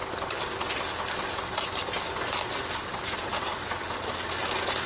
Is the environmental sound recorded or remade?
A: recorded